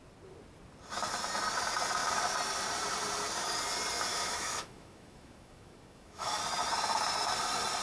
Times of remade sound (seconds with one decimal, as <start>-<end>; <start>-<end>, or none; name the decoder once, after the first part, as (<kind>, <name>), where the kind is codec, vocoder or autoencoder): 4.1-6.4 (autoencoder, DAC-VAE)